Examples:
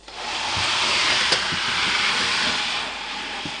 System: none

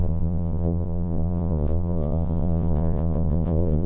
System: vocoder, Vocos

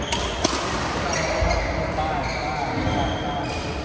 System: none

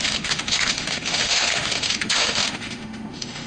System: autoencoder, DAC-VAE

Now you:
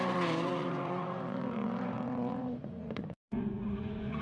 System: vocoder, Vocos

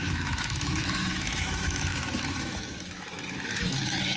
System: autoencoder, DAC-VAE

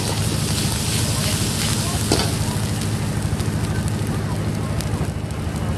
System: none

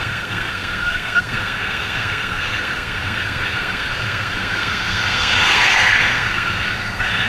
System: codec, SNAC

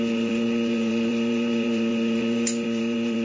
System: vocoder, BigVGAN v2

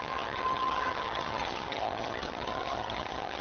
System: vocoder, HiFi-GAN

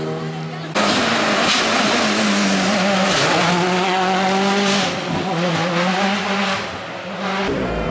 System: none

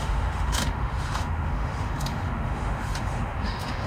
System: autoencoder, DAC-VAE